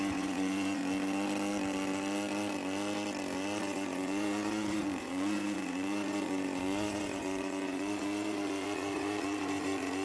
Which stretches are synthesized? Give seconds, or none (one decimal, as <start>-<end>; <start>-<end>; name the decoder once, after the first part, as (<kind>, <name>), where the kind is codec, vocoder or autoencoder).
0.0-0.8 (vocoder, Vocos); 3.6-10.0